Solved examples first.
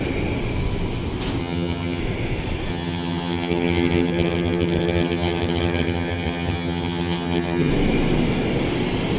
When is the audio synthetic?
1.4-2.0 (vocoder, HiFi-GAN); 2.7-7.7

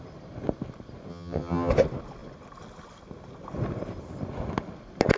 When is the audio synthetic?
1.1-1.7 (vocoder, HiFi-GAN)

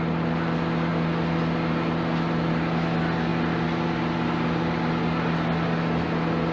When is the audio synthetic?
none

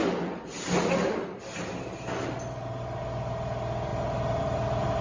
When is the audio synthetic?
none